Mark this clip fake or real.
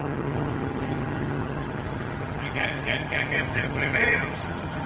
fake